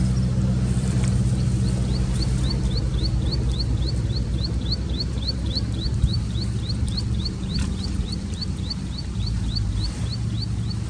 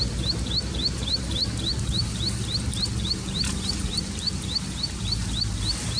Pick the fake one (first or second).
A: first